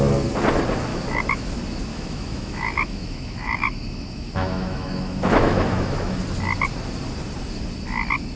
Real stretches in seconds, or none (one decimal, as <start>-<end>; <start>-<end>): 0.0-0.9; 1.5-1.9; 6.2-8.4